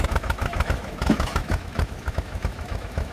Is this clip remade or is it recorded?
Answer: remade